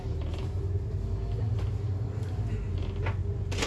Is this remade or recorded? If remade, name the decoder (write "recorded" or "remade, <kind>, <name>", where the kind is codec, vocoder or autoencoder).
recorded